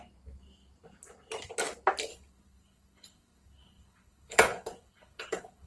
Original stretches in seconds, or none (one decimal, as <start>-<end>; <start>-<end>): 0.0-2.1